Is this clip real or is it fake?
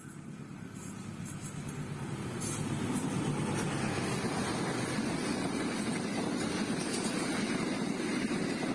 real